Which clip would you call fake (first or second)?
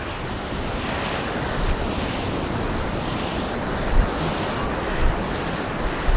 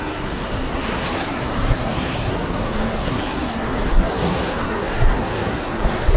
second